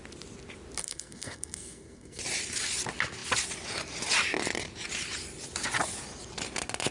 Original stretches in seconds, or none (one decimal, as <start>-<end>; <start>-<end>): 0.0-0.8; 2.2-6.9